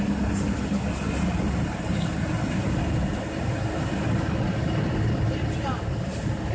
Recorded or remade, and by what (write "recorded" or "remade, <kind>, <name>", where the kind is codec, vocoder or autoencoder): recorded